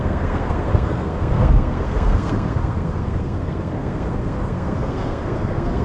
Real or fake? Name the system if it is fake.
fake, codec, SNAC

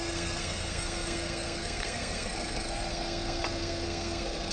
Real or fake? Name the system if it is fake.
fake, codec, SNAC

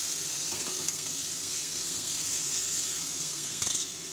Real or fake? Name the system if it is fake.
fake, codec, SNAC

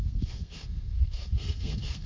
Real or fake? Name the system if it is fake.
fake, codec, SNAC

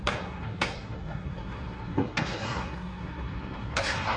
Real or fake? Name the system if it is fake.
fake, codec, SNAC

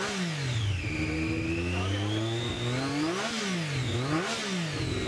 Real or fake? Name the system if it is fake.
real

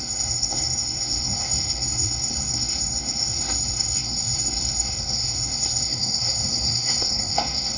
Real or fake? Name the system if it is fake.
fake, codec, SNAC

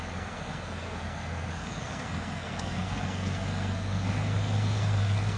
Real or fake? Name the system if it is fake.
fake, codec, SNAC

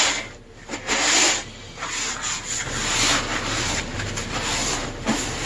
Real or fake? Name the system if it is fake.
real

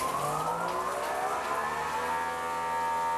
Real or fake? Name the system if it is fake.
real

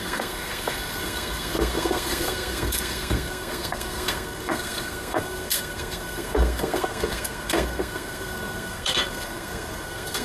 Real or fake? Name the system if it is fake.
fake, codec, SNAC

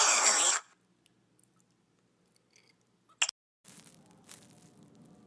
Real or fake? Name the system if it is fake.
real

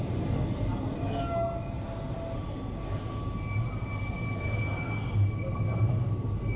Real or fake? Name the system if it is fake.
real